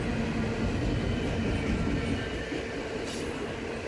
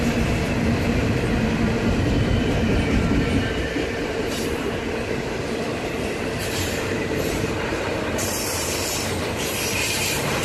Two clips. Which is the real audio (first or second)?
first